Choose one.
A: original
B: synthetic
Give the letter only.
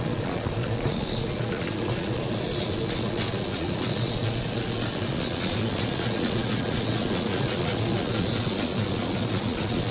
B